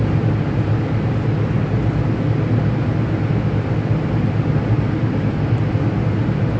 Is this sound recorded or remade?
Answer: recorded